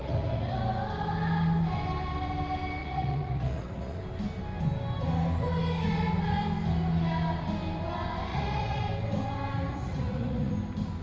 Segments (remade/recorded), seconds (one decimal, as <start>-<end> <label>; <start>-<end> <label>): 0.0-0.6 remade; 0.6-2.8 recorded; 2.8-4.0 remade; 4.0-8.3 recorded; 8.3-8.8 remade; 8.8-9.7 recorded; 9.7-10.5 remade; 10.5-11.0 recorded